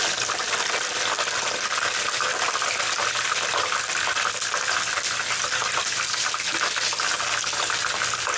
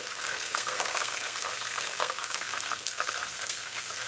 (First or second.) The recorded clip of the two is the first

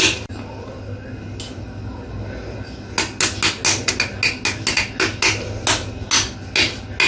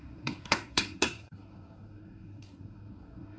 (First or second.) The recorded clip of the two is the first